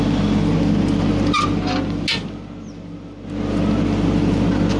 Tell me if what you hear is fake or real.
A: real